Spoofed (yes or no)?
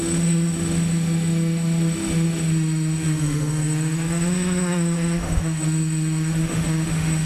yes